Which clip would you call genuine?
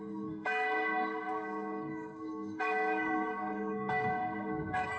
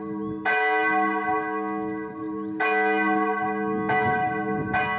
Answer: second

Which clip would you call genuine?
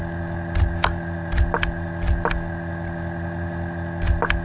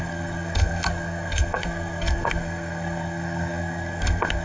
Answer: first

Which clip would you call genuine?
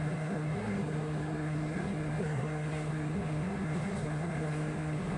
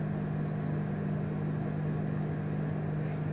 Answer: second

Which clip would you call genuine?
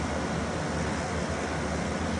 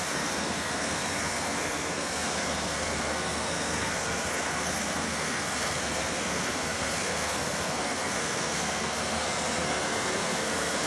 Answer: first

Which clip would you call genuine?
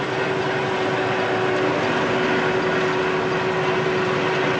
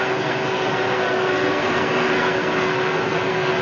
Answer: first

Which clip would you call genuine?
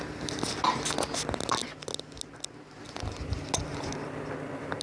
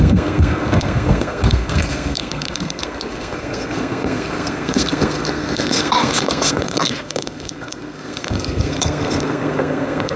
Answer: first